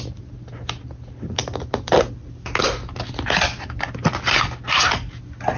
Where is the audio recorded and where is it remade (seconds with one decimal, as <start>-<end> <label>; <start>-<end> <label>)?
0.0-5.6 recorded